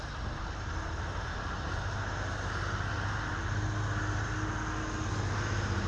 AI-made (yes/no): no